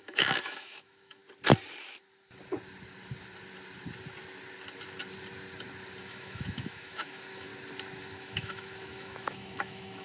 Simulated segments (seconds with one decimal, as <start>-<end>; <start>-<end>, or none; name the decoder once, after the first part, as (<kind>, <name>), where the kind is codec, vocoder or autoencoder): 0.0-1.2 (autoencoder, DAC-VAE); 6.0-7.5; 8.0-10.0